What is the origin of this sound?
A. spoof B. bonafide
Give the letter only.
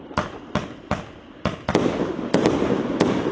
B